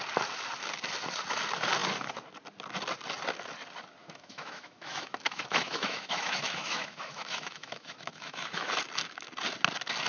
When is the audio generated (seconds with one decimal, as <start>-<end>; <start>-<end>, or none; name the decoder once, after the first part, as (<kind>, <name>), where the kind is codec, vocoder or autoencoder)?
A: 4.0-8.7 (autoencoder, DAC-VAE)